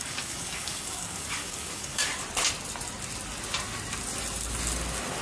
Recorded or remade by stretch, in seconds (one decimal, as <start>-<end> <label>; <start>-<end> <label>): 0.0-2.1 remade; 2.1-5.2 recorded